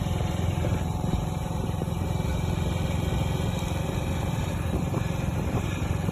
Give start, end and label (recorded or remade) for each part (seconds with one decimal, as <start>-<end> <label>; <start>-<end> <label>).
0.0-2.3 remade; 2.3-3.9 recorded; 3.9-6.1 remade